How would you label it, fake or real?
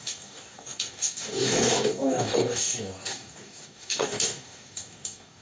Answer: fake